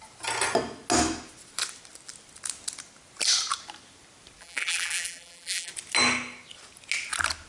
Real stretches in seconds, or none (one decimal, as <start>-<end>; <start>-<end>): 0.0-4.4; 5.7-7.5